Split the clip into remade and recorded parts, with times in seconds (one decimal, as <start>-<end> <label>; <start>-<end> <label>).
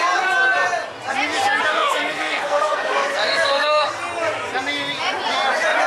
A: 0.0-1.7 recorded; 1.7-3.9 remade; 3.9-5.9 recorded